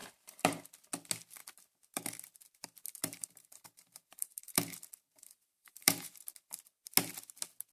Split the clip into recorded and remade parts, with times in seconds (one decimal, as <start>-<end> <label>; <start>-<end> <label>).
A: 0.0-0.6 remade; 0.6-3.0 recorded; 3.0-6.7 remade; 6.7-7.7 recorded